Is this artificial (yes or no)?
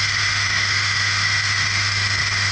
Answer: yes